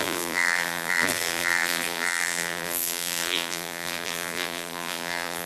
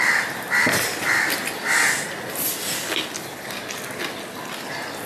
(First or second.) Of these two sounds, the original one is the second